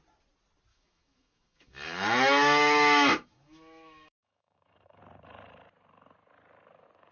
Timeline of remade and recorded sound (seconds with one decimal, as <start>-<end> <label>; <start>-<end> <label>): 0.0-0.7 recorded; 0.7-5.0 remade; 5.0-7.1 recorded

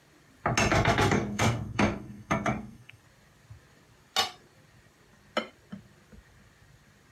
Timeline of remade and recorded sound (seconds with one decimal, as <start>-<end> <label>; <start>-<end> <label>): 0.0-0.7 recorded; 0.7-3.0 remade; 3.0-7.1 recorded

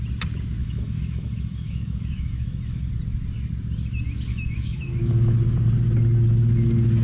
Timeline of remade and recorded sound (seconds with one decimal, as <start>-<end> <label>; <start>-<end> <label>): 0.0-0.6 recorded; 0.6-2.9 remade; 2.9-4.3 recorded; 4.3-5.4 remade; 5.4-7.0 recorded

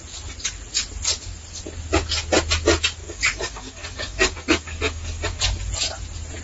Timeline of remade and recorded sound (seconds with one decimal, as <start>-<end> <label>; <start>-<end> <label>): 0.0-3.0 recorded; 3.0-5.6 remade; 5.6-6.4 recorded

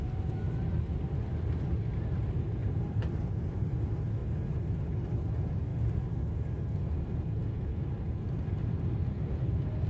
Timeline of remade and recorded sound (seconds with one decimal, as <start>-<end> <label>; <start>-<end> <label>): 0.0-2.6 recorded; 2.6-3.6 remade; 3.6-9.9 recorded

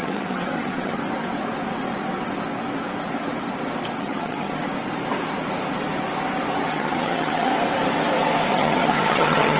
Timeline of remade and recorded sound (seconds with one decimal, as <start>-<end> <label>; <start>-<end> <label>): 0.0-1.0 remade; 1.0-4.0 recorded; 4.0-4.6 remade; 4.6-6.7 recorded; 6.7-7.5 remade; 7.5-8.5 recorded; 8.5-9.6 remade